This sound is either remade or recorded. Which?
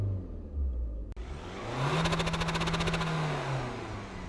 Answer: recorded